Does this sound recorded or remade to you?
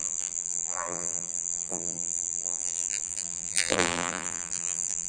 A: remade